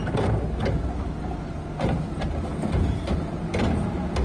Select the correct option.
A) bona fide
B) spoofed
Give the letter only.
A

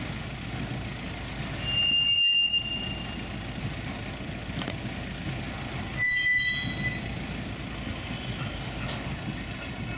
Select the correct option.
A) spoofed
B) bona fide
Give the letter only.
B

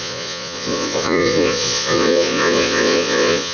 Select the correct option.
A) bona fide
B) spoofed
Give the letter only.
B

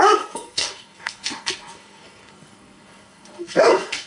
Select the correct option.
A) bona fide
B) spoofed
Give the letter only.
B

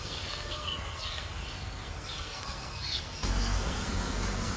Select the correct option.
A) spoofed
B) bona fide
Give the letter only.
A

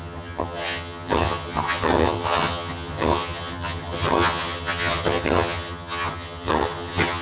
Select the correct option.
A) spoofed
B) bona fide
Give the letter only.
A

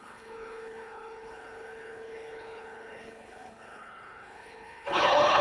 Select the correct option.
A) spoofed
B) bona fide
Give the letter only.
A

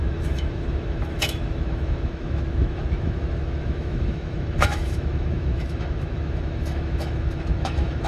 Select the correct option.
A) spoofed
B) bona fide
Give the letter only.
A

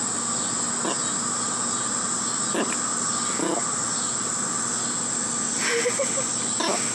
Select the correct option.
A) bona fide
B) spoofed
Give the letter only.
A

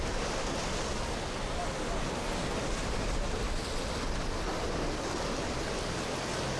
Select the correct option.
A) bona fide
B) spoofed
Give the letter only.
A